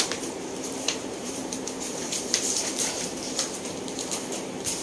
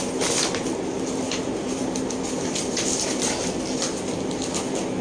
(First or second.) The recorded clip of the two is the second